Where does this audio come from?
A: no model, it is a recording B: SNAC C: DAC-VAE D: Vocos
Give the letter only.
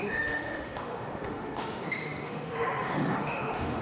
C